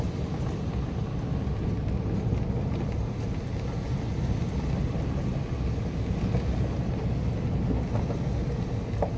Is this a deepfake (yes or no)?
no